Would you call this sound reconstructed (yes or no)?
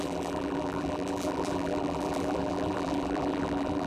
yes